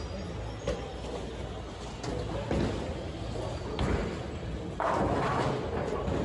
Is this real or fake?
real